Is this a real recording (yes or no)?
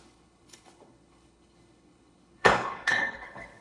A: no